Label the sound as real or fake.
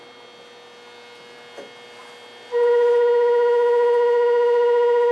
real